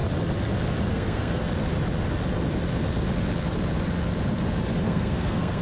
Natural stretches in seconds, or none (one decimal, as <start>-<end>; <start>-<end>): 0.0-0.9; 1.4-4.8